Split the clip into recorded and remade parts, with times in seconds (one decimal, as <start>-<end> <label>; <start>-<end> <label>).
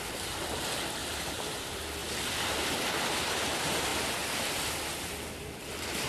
0.0-1.0 recorded; 1.0-1.6 remade; 1.6-6.1 recorded